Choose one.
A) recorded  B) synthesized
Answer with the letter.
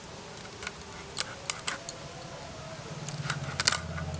A